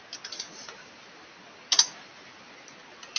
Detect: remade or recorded recorded